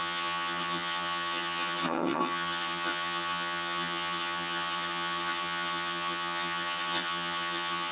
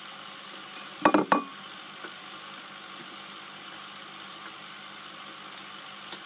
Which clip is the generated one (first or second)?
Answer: first